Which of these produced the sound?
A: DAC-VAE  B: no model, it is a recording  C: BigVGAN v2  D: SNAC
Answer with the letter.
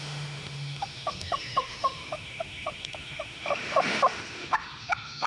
A